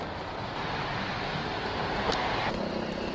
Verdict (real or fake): fake